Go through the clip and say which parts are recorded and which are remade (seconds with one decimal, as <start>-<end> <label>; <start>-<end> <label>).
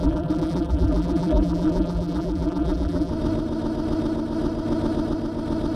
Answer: 0.0-3.1 remade; 3.1-5.8 recorded